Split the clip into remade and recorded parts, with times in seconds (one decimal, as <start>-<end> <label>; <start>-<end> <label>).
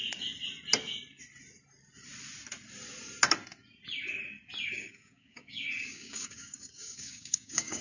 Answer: 0.0-4.7 recorded; 4.7-7.8 remade